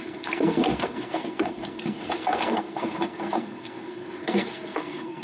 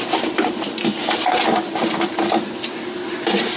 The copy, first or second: first